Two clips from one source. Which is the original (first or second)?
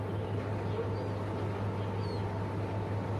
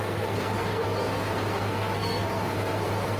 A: first